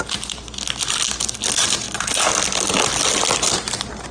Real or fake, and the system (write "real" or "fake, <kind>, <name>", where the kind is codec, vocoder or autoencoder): real